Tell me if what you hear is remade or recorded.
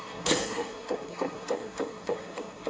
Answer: remade